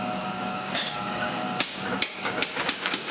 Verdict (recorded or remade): remade